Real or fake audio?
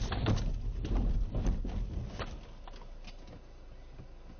real